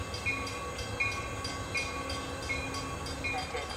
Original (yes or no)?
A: yes